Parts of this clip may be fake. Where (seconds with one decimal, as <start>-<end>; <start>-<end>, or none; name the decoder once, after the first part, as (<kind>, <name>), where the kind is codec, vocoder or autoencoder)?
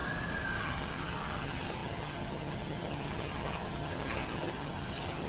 0.6-5.3 (vocoder, HiFi-GAN)